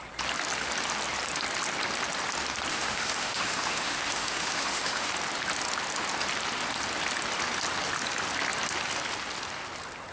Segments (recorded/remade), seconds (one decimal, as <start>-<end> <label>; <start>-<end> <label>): 0.0-2.7 recorded; 2.7-5.1 remade; 5.1-10.1 recorded

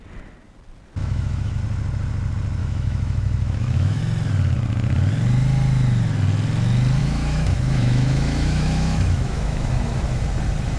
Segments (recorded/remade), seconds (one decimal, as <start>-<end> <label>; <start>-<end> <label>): 0.0-1.0 recorded; 1.0-1.6 remade; 1.6-2.6 recorded; 2.6-4.0 remade; 4.0-7.0 recorded; 7.0-10.2 remade; 10.2-10.8 recorded

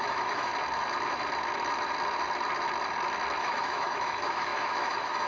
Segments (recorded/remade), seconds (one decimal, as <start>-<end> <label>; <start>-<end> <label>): 0.0-0.5 remade; 0.5-3.4 recorded; 3.4-5.3 remade

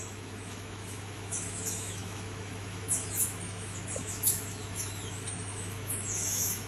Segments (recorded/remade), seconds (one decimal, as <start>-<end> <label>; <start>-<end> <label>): 0.0-6.7 remade

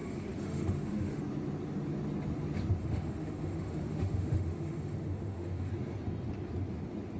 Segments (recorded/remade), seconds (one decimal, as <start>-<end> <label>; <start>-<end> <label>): 0.0-1.2 remade; 1.2-2.8 recorded; 2.8-5.7 remade; 5.7-7.2 recorded

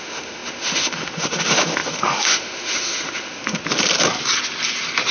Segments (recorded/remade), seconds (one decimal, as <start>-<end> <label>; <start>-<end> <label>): 0.0-3.6 remade; 3.6-5.1 recorded